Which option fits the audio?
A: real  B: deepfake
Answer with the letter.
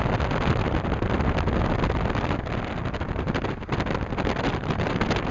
A